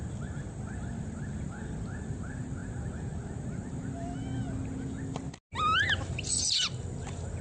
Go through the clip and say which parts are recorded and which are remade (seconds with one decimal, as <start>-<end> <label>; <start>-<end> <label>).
0.0-7.4 recorded